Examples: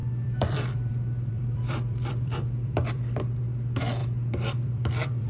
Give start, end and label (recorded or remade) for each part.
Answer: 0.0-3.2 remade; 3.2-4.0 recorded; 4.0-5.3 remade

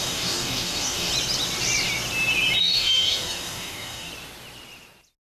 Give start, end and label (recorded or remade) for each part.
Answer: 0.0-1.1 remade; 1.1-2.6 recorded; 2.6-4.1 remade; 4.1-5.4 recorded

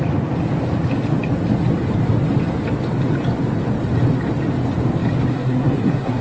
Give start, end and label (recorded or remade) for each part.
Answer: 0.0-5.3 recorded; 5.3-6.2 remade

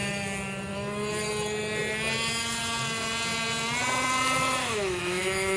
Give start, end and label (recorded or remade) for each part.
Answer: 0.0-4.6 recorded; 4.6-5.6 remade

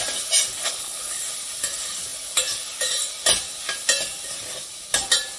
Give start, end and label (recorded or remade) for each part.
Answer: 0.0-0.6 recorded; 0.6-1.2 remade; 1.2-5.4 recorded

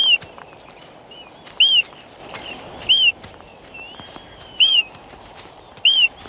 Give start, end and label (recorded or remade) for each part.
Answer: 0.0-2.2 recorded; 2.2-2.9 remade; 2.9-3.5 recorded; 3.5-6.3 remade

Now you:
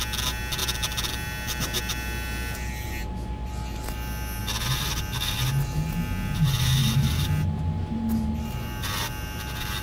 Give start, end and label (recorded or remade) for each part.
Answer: 0.0-6.8 recorded; 6.8-7.3 remade; 7.3-9.8 recorded